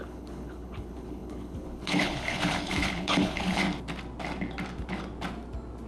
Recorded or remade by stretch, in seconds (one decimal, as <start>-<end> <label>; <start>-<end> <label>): 0.0-3.6 remade; 3.6-5.9 recorded